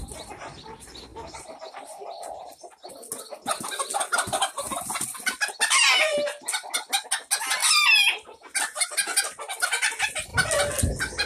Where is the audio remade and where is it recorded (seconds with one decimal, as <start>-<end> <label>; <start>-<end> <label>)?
0.0-11.3 recorded